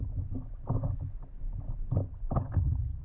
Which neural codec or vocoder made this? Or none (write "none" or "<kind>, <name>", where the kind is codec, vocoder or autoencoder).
none